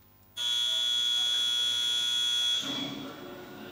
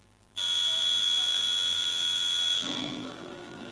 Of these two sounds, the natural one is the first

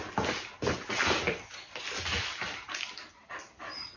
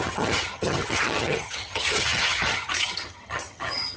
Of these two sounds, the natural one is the first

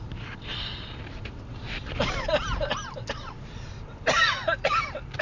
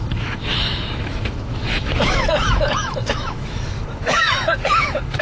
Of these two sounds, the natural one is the first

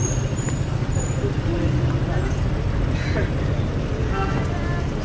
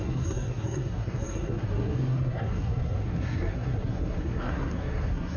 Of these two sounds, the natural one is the first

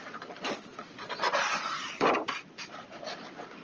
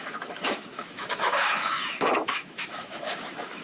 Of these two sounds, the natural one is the first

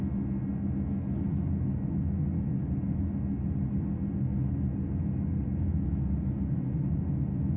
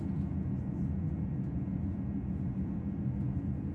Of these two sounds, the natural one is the first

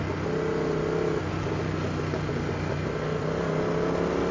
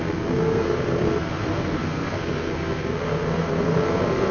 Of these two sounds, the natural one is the first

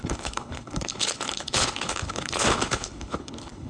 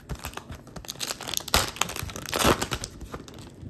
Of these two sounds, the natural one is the second